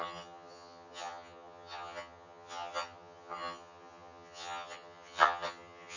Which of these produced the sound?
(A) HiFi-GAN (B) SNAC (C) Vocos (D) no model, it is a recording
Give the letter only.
A